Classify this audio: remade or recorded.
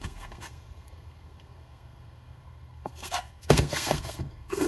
remade